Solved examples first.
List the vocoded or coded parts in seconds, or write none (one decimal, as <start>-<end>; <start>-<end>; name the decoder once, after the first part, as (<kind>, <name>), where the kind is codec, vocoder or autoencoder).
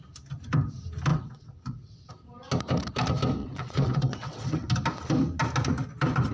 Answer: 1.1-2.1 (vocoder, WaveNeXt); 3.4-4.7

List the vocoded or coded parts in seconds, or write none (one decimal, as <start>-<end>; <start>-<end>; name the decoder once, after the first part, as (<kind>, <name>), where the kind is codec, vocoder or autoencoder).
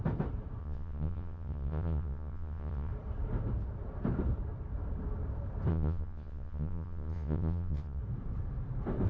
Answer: 0.6-2.9 (vocoder, Vocos); 5.7-8.0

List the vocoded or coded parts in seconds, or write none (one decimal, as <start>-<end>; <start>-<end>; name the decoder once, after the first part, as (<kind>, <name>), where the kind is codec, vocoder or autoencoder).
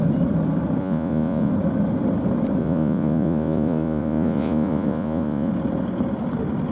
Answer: 0.8-1.5 (vocoder, Vocos); 2.6-5.5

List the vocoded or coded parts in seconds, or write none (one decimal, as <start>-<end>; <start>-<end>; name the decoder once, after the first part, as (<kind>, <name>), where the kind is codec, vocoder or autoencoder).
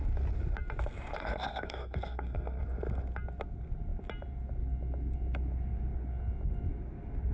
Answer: 1.2-2.6 (codec, SNAC)